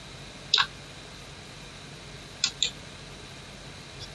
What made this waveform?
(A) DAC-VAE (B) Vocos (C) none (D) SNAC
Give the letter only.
C